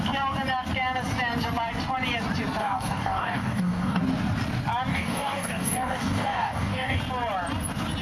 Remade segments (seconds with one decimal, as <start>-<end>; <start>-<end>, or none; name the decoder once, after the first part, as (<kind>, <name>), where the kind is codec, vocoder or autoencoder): 2.6-4.0 (codec, DAC); 4.9-7.0